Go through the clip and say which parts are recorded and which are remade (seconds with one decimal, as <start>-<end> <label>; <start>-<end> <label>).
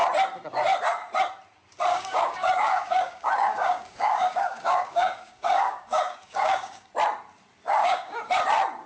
0.0-1.9 recorded; 1.9-6.9 remade; 6.9-7.8 recorded; 7.8-8.3 remade; 8.3-8.9 recorded